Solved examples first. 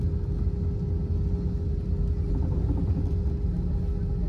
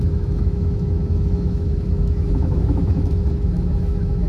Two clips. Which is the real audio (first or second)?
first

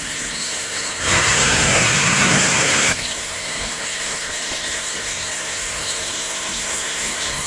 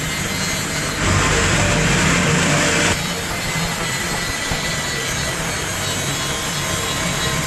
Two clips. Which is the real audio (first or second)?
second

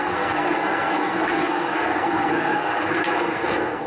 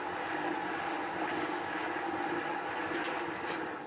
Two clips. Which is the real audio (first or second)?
second